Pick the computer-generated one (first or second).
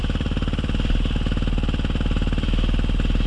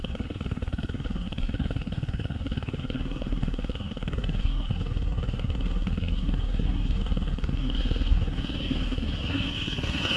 second